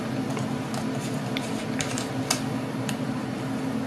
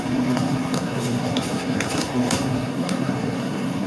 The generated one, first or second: second